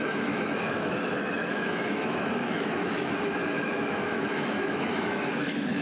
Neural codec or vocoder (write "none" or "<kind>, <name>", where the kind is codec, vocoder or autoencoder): autoencoder, DAC-VAE